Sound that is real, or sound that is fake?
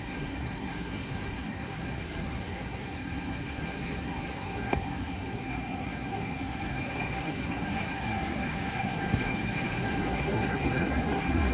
fake